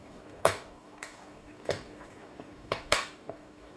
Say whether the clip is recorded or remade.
remade